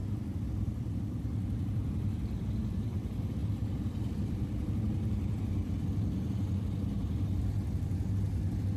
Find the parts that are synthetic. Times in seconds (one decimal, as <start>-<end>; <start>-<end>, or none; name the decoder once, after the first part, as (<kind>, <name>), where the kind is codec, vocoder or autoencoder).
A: 0.5-8.8 (vocoder, BigVGAN v2)